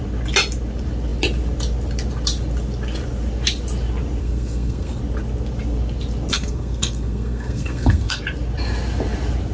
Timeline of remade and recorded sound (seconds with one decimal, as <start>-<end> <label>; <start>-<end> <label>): 0.0-4.2 recorded; 4.2-5.0 remade; 5.0-6.3 recorded; 6.3-8.2 remade; 8.2-9.5 recorded